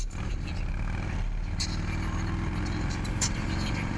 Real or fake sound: real